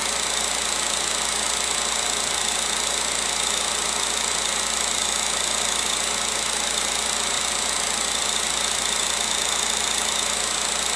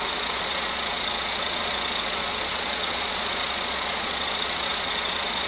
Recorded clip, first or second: first